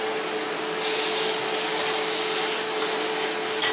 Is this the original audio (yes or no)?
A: yes